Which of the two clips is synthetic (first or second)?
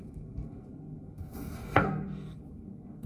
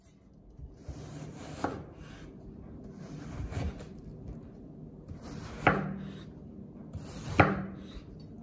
first